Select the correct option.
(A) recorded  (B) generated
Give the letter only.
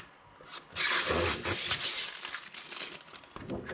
A